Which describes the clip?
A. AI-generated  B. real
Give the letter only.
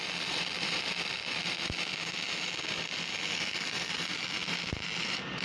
B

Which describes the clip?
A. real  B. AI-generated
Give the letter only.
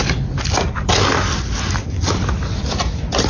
A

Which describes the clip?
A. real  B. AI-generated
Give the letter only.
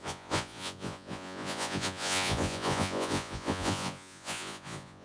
B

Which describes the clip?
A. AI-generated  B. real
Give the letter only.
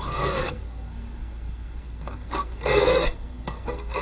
A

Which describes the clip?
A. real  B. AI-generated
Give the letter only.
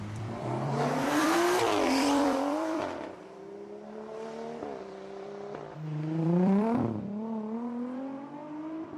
B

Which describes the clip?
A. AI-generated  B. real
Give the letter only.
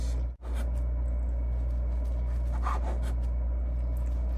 B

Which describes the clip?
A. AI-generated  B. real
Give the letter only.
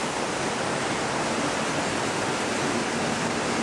B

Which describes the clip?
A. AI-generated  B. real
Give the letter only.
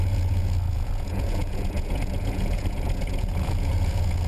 A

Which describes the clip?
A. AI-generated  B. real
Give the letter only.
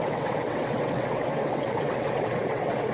A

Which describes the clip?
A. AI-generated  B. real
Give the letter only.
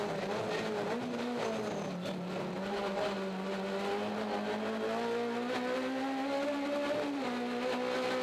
B